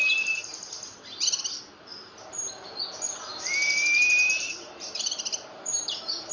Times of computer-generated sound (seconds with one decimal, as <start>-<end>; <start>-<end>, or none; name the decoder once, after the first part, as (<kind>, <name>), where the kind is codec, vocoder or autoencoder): 1.9-2.5 (vocoder, BigVGAN v2); 3.3-6.3

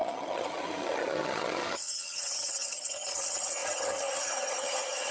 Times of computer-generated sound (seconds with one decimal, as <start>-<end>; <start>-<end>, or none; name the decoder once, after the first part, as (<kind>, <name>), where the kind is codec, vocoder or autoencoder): 0.0-5.1 (vocoder, HiFi-GAN)